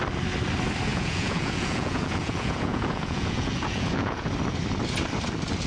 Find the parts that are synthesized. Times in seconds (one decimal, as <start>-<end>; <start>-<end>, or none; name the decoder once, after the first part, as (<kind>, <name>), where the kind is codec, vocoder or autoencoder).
0.9-4.3 (vocoder, Vocos)